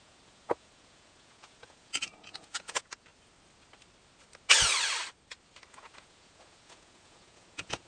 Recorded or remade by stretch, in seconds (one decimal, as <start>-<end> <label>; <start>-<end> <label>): 0.0-3.1 remade; 3.1-5.7 recorded; 5.7-7.9 remade